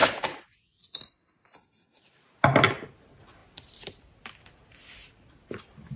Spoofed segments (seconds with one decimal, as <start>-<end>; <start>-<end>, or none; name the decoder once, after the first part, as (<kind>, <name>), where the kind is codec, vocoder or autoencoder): 0.0-0.8 (vocoder, BigVGAN v2); 3.4-5.3